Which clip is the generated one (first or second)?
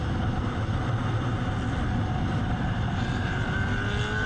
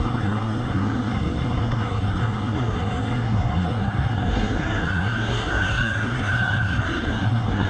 second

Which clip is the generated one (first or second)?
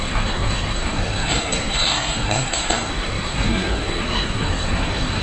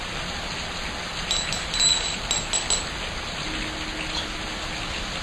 first